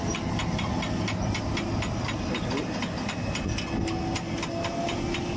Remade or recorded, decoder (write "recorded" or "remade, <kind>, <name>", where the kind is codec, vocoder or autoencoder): recorded